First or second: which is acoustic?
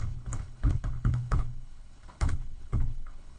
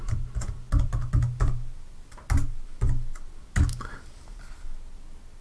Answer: second